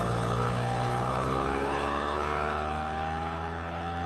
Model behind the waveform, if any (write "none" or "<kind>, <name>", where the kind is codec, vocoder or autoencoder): codec, HILCodec